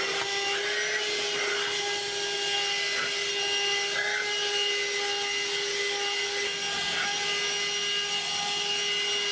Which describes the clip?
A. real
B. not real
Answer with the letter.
A